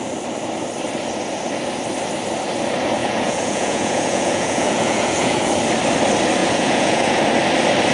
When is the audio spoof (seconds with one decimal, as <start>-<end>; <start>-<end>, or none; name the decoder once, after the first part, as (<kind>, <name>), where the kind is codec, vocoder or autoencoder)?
3.0-5.5 (vocoder, Vocos); 6.4-7.2